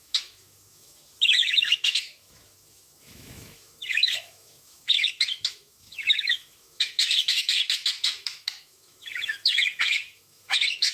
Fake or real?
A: fake